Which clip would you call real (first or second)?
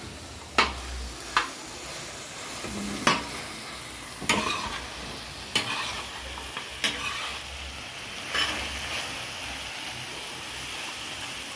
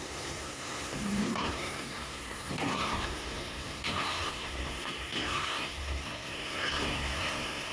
first